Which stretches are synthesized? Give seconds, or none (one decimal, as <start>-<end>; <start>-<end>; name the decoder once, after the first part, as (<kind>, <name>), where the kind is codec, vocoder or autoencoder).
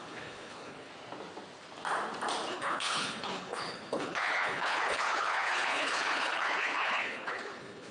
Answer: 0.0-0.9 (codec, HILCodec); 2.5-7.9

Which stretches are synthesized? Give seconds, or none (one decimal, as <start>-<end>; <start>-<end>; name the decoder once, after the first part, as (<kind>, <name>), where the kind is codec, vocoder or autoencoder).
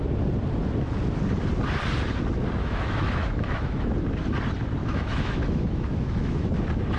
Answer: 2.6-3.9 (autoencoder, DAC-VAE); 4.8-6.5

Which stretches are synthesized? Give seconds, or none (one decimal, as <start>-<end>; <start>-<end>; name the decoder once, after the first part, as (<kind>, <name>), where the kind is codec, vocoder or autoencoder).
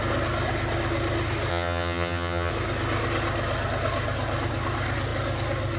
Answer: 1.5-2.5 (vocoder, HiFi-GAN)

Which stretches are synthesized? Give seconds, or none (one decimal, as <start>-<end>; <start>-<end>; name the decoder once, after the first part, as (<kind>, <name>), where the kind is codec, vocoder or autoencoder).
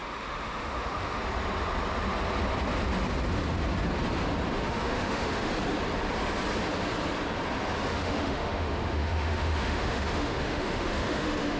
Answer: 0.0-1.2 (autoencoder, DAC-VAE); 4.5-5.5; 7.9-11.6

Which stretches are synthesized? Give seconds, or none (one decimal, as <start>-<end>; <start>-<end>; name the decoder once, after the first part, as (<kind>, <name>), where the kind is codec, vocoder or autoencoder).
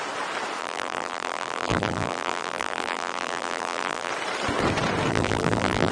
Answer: 0.6-4.1 (vocoder, BigVGAN v2); 5.1-5.9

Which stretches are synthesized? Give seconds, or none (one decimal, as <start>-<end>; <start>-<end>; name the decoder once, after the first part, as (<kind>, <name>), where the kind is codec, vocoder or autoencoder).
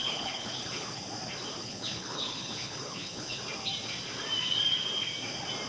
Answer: 0.0-1.0 (codec, HILCodec); 1.6-3.4